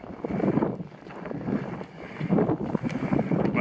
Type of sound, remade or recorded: recorded